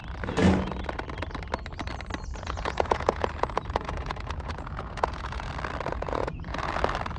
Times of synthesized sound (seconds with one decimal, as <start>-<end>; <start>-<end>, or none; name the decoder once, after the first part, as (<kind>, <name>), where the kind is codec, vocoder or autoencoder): 2.3-5.5 (vocoder, Vocos); 5.9-6.6